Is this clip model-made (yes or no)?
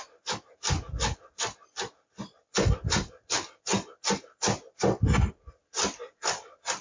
no